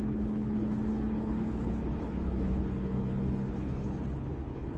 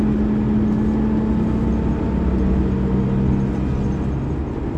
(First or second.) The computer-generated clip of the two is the first